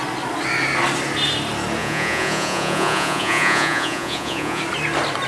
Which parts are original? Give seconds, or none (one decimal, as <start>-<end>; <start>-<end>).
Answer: 0.0-1.8; 4.6-5.3